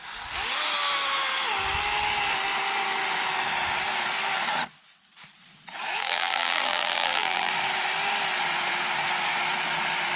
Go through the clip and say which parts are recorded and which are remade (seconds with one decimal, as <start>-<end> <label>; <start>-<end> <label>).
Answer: 0.0-6.0 recorded; 6.0-7.5 remade; 7.5-10.2 recorded